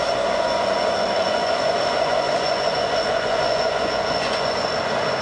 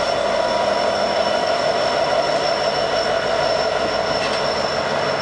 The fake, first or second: first